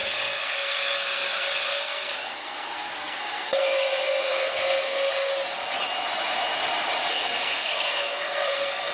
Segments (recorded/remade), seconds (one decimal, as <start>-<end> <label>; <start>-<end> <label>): 0.0-5.3 remade; 5.3-7.1 recorded; 7.1-8.9 remade